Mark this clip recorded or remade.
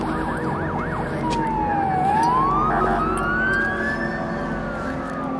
recorded